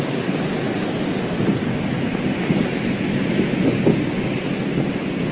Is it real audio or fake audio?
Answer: real